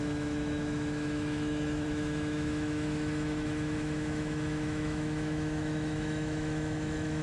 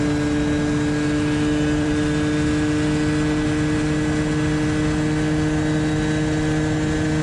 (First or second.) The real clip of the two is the second